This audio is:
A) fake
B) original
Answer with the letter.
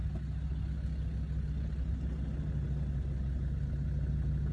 B